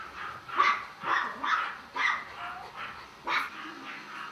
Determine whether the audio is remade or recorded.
recorded